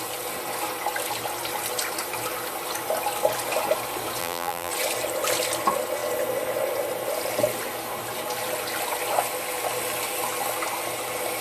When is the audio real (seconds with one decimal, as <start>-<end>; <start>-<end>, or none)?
0.0-4.2; 4.7-11.4